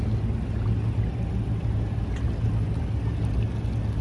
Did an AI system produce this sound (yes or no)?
no